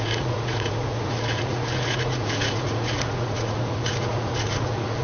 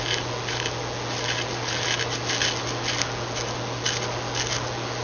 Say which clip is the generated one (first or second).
first